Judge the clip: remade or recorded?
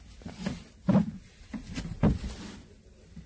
recorded